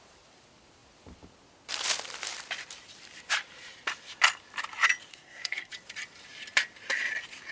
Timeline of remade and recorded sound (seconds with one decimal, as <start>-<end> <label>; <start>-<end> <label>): 0.0-5.1 recorded; 5.1-5.7 remade; 5.7-7.5 recorded